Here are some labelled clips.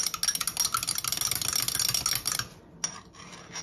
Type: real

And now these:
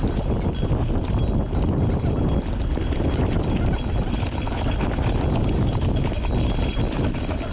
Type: real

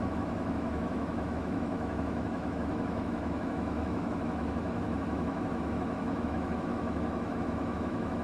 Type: fake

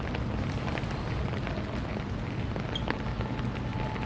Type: real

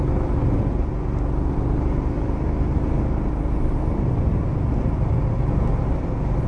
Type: real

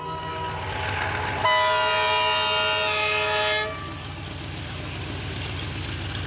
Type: real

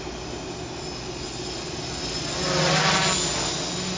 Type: real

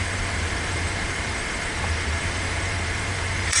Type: fake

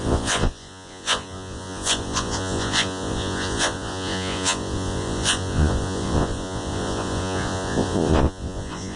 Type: fake